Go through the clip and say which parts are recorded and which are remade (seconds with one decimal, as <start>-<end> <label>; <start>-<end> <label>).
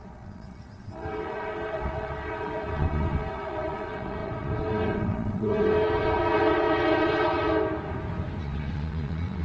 0.0-7.5 remade; 7.5-8.4 recorded; 8.4-9.4 remade